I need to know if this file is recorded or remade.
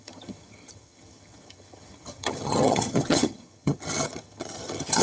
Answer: remade